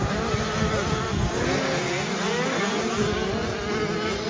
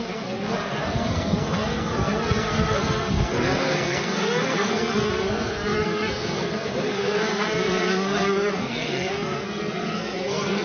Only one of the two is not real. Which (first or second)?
second